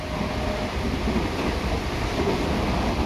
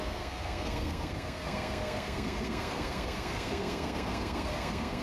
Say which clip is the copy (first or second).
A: second